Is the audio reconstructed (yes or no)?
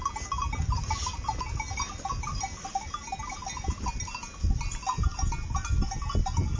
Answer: no